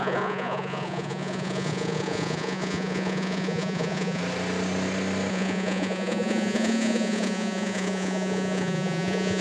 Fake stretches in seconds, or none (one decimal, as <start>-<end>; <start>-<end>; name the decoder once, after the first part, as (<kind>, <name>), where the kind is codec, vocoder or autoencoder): 0.0-4.2 (vocoder, Vocos); 5.3-9.4